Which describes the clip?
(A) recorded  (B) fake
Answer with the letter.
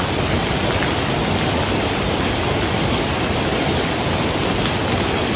A